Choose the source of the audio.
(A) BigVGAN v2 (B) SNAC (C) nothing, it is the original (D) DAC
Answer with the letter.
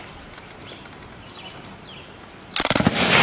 C